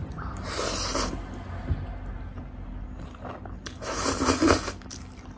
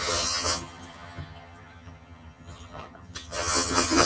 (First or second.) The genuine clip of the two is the first